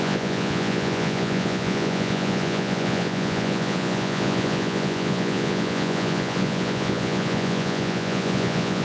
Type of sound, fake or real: fake